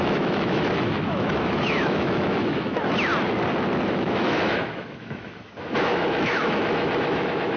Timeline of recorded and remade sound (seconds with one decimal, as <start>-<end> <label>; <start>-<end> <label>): 0.0-3.1 remade; 3.1-3.9 recorded; 3.9-7.6 remade